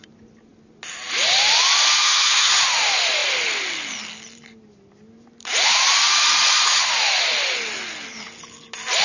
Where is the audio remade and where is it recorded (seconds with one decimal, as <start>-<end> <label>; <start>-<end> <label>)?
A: 0.0-2.0 recorded; 2.0-2.5 remade; 2.5-9.0 recorded